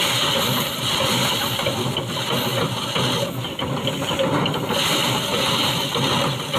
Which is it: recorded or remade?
recorded